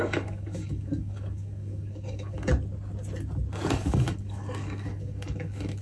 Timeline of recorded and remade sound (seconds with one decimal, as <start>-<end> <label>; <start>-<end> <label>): 0.0-2.5 remade; 2.5-3.7 recorded; 3.7-5.8 remade

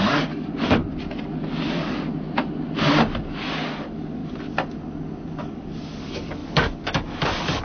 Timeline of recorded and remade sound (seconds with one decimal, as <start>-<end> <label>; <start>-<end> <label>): 0.0-0.8 remade; 0.8-3.2 recorded; 3.2-4.2 remade; 4.2-5.4 recorded; 5.4-7.6 remade